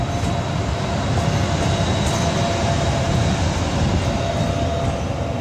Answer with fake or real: real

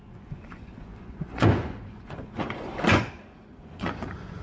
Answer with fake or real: fake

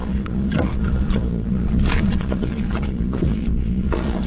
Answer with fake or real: fake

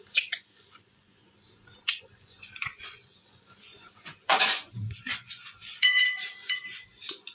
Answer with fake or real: fake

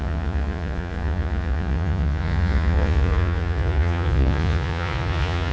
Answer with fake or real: fake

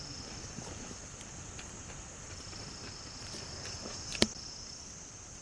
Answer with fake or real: real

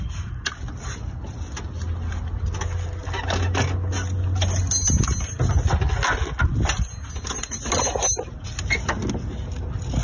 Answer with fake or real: real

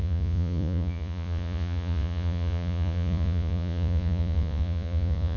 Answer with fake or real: fake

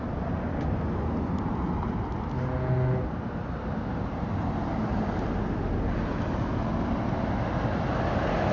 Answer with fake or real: real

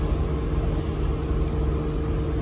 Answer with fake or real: real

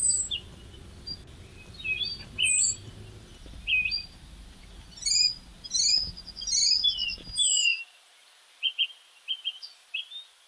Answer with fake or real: real